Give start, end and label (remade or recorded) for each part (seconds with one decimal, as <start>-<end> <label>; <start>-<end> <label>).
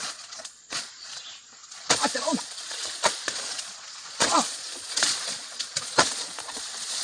0.0-7.0 remade